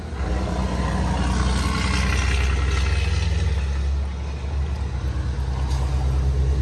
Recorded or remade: recorded